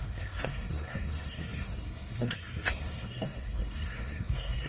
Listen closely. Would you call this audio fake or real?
fake